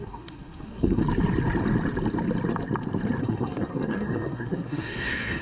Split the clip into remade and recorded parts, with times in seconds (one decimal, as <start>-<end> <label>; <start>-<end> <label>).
0.0-1.0 remade; 1.0-3.2 recorded; 3.2-5.4 remade